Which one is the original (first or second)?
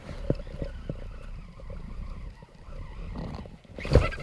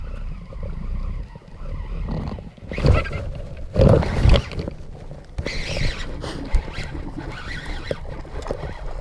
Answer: second